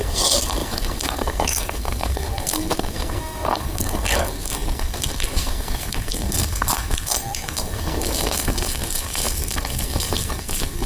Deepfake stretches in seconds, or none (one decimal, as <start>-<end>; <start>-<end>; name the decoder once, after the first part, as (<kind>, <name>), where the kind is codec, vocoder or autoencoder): 0.0-10.9 (codec, SNAC)